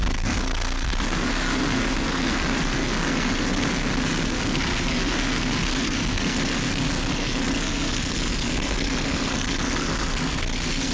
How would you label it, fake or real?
fake